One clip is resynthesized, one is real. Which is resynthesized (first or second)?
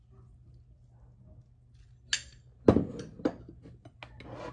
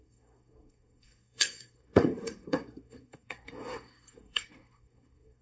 second